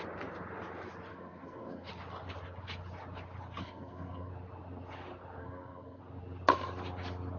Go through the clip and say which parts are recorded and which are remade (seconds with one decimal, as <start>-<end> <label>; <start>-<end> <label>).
0.0-1.1 recorded; 1.1-1.9 remade; 1.9-3.6 recorded; 3.6-4.3 remade; 4.3-5.4 recorded; 5.4-6.0 remade; 6.0-7.4 recorded

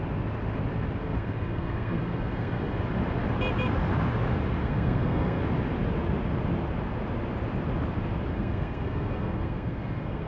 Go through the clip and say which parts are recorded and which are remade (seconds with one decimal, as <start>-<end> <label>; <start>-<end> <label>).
0.0-1.0 recorded; 1.0-2.8 remade; 2.8-4.6 recorded; 4.6-5.4 remade; 5.4-8.3 recorded; 8.3-10.3 remade

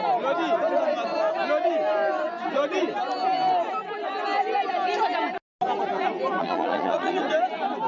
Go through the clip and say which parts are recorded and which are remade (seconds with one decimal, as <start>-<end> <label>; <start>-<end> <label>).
0.0-6.4 recorded; 6.4-7.2 remade; 7.2-7.9 recorded

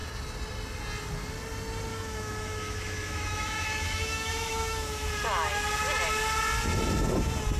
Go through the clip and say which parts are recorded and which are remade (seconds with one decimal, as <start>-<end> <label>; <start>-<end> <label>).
0.0-1.9 recorded; 1.9-5.1 remade; 5.1-7.6 recorded

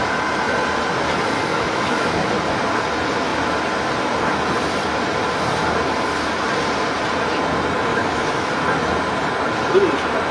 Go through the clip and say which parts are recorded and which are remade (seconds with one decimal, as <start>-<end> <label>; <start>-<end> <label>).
0.0-1.5 recorded; 1.5-2.3 remade; 2.3-7.9 recorded; 7.9-8.5 remade; 8.5-10.3 recorded